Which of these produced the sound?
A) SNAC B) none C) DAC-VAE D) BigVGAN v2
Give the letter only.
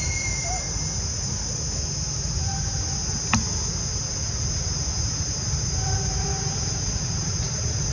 B